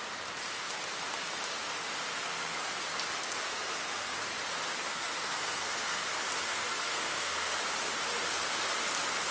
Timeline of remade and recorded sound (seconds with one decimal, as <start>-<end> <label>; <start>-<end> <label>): 0.0-2.1 recorded; 2.1-2.7 remade; 2.7-3.5 recorded; 3.5-4.1 remade; 4.1-4.9 recorded; 4.9-6.1 remade; 6.1-6.5 recorded; 6.5-7.6 remade; 7.6-9.3 recorded